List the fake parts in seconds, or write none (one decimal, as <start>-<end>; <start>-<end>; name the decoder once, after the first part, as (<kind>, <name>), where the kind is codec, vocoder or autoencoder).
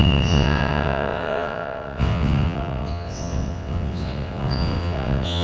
0.0-5.4 (vocoder, WaveNeXt)